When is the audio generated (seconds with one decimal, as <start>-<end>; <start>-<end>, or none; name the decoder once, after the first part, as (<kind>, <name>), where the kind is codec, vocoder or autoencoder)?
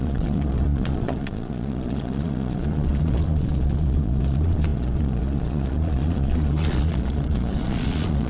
0.0-8.3 (vocoder, Vocos)